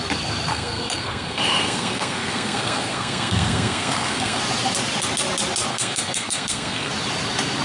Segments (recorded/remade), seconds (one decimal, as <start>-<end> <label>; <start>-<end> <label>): 0.0-0.5 recorded; 0.5-4.4 remade; 4.4-5.7 recorded; 5.7-6.9 remade; 6.9-7.6 recorded